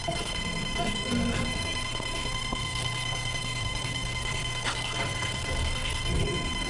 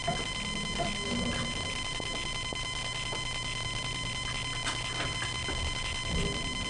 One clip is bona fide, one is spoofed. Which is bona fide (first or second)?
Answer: second